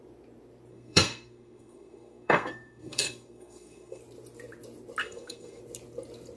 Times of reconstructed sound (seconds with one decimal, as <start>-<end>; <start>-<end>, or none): 0.7-4.0; 5.0-5.6